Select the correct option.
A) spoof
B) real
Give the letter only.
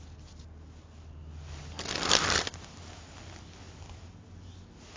B